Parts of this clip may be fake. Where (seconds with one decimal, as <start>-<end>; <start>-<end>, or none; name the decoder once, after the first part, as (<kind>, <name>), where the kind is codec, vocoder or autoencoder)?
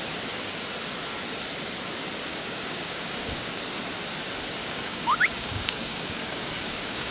2.3-3.6 (codec, DAC); 4.6-7.1